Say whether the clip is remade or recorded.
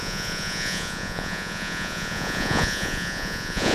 remade